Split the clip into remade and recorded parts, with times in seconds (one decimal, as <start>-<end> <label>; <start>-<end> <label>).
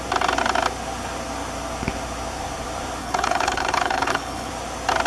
0.0-3.0 recorded; 3.0-4.5 remade; 4.5-5.1 recorded